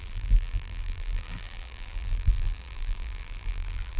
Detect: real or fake fake